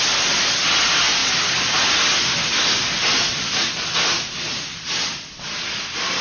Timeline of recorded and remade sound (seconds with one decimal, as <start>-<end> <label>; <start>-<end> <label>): 0.0-6.2 recorded